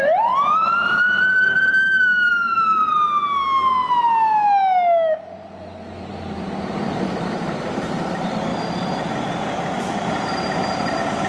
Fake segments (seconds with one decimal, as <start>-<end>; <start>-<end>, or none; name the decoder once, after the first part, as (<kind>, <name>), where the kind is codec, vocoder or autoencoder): 0.0-2.9 (vocoder, BigVGAN v2); 6.0-8.5; 9.7-11.3